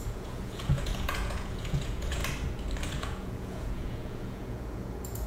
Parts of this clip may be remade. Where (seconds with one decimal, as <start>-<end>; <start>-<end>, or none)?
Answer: 0.0-2.2; 2.9-5.3